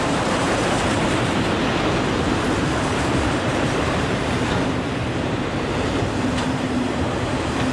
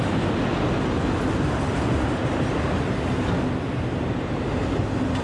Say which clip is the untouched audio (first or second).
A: second